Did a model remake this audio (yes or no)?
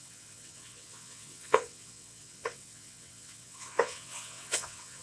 yes